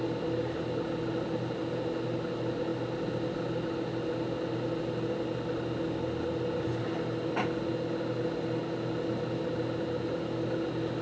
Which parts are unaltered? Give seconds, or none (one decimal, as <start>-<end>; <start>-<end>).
0.0-11.0